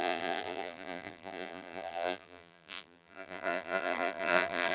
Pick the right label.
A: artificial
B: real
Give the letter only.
A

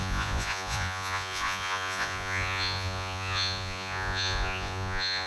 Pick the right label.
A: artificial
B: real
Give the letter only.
A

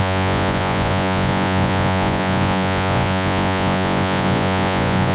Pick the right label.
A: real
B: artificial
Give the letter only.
B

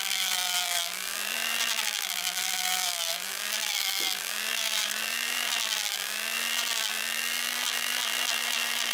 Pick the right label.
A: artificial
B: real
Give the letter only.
A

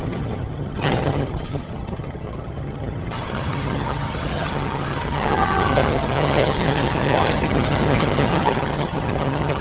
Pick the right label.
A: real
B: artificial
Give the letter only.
B